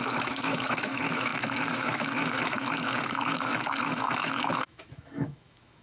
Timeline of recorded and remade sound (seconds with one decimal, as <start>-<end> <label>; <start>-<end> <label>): 0.0-5.8 remade